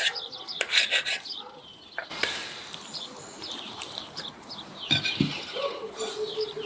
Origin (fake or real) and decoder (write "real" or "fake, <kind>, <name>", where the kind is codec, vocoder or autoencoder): fake, vocoder, BigVGAN v2